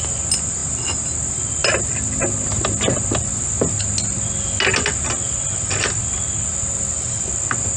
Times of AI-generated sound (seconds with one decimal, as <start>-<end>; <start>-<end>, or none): none